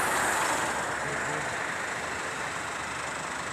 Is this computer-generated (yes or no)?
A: no